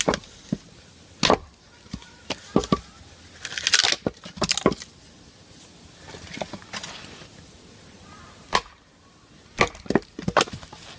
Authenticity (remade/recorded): recorded